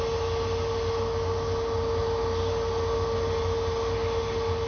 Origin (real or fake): real